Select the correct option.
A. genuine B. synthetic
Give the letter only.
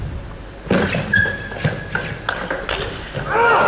A